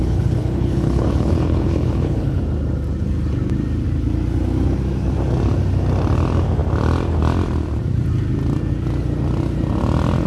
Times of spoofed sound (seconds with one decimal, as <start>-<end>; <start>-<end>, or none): 0.0-2.4

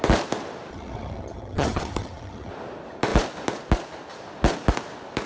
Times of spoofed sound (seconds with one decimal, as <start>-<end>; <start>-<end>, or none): 0.7-2.5

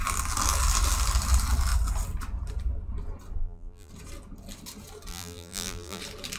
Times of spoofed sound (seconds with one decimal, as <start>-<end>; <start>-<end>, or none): 3.4-3.9; 5.1-6.0